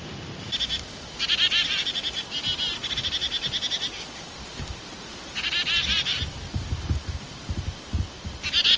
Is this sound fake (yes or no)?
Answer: no